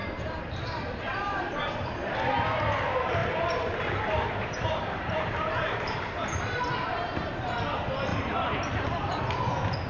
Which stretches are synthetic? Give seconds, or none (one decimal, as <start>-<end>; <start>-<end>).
0.0-1.7; 3.2-7.5; 8.1-9.2